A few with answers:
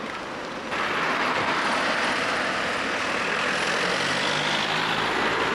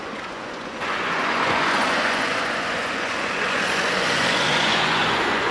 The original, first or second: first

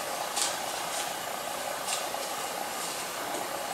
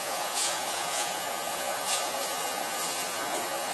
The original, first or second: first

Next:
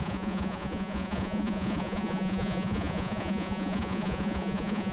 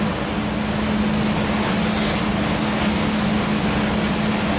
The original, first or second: second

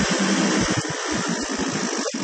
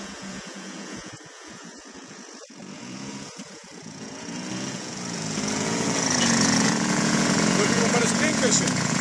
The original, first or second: first